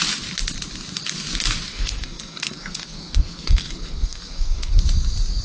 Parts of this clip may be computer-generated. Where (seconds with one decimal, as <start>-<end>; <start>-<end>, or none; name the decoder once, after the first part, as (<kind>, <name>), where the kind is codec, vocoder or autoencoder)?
1.7-4.8 (codec, SNAC)